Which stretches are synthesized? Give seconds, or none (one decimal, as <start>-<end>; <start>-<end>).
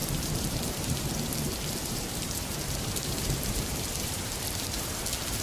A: 0.0-1.1; 1.8-5.0